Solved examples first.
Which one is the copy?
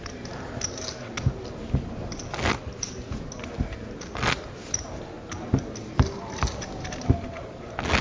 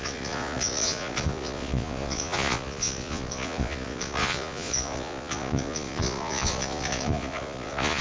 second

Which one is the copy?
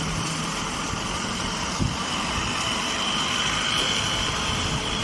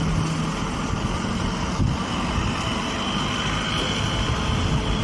first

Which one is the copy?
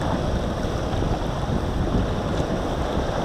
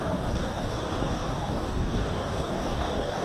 second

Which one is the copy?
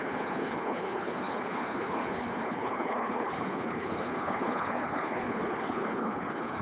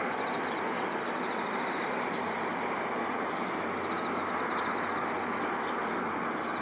first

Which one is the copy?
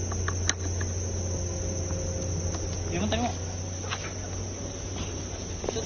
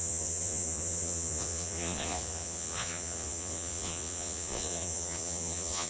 second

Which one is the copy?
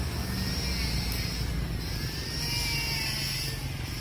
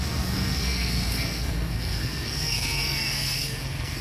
second